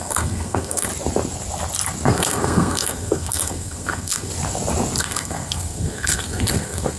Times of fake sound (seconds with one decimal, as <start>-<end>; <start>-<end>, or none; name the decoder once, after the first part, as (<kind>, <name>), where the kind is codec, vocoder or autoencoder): 0.0-0.9 (codec, SNAC); 2.1-4.3; 5.0-7.0

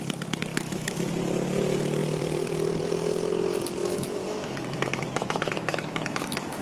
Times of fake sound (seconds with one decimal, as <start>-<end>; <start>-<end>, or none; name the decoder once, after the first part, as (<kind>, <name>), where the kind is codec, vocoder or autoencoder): 0.5-1.1 (autoencoder, DAC-VAE); 3.8-6.6